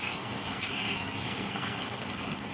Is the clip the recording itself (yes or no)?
no